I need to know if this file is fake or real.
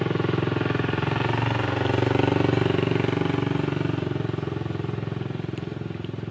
real